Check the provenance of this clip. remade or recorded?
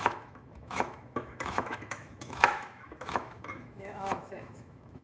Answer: remade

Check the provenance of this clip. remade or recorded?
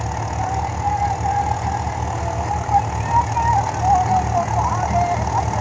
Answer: recorded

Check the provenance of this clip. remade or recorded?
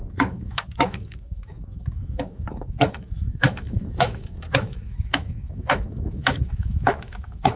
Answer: remade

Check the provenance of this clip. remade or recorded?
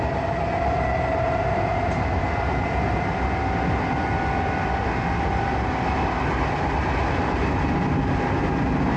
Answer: recorded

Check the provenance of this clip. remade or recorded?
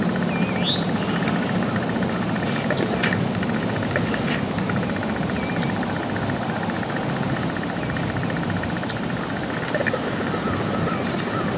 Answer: recorded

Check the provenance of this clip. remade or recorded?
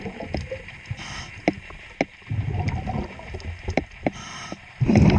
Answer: recorded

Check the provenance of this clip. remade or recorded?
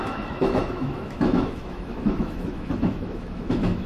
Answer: remade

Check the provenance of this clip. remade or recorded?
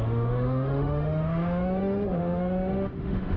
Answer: remade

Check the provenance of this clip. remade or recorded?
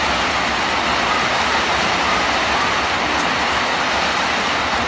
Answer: recorded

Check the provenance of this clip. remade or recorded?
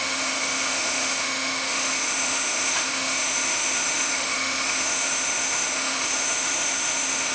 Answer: remade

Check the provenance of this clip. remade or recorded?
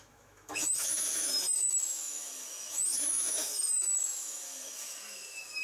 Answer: remade